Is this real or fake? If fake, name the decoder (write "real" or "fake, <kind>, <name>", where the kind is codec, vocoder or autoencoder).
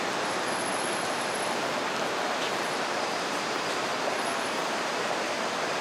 fake, vocoder, BigVGAN v2